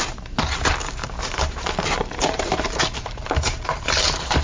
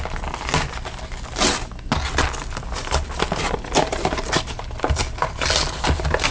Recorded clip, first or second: second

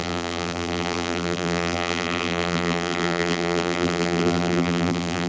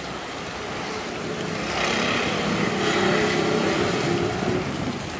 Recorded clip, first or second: second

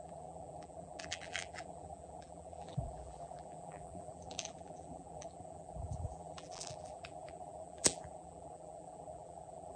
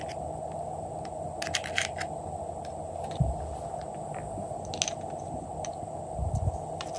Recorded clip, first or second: second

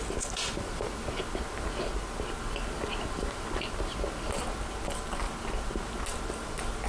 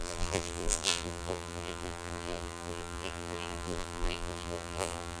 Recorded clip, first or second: first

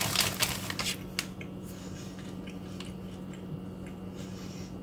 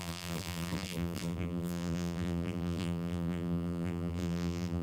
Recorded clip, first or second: first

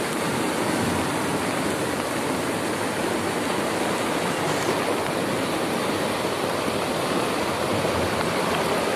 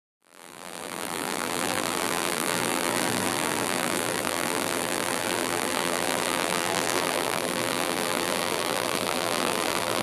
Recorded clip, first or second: first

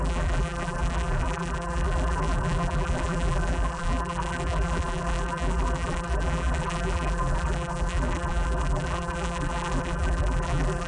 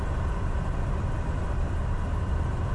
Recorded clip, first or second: second